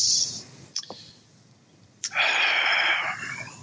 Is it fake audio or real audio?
fake